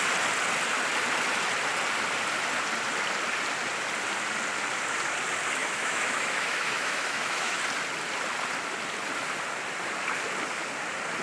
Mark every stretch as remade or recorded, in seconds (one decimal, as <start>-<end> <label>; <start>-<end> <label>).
0.0-5.6 recorded; 5.6-7.6 remade; 7.6-11.2 recorded